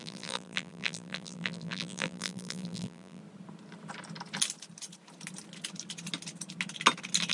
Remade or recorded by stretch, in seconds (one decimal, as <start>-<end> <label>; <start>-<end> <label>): 0.0-3.2 remade; 3.2-7.3 recorded